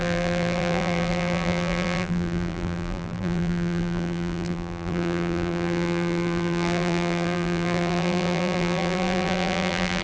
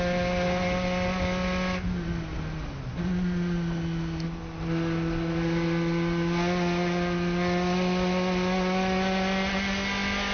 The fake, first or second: first